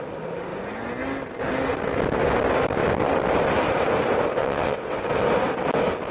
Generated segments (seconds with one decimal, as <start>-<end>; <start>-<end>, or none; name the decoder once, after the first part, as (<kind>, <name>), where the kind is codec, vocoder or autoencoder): 4.4-5.0 (vocoder, WaveNeXt)